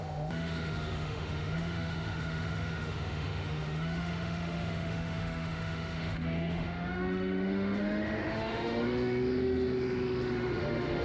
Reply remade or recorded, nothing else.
remade